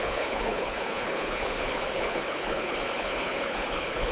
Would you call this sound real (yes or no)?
no